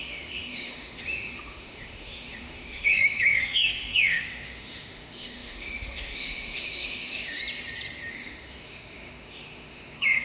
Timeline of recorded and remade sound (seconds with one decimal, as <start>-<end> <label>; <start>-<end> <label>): 0.0-7.4 remade; 7.4-8.1 recorded; 8.1-10.2 remade